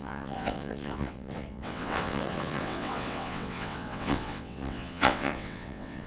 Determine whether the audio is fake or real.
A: fake